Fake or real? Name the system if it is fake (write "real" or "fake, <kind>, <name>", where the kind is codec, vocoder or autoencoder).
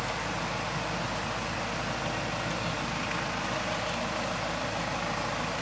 real